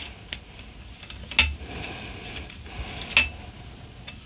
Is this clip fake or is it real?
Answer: real